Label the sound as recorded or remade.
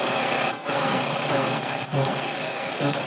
remade